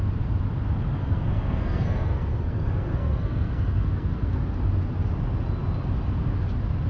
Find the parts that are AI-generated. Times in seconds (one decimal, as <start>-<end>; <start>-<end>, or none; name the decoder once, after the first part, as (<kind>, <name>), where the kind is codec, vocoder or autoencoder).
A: 1.0-4.4 (codec, SNAC)